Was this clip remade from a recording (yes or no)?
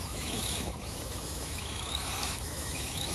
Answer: yes